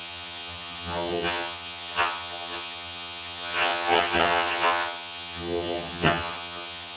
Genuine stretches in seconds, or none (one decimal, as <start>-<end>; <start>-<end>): none